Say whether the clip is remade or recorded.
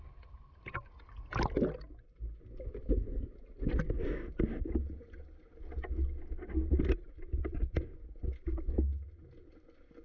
recorded